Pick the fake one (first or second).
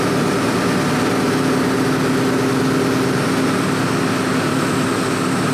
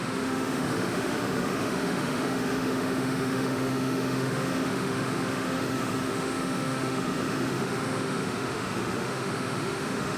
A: second